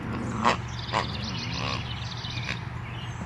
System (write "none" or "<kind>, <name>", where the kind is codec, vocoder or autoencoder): none